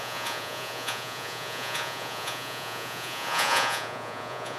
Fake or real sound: fake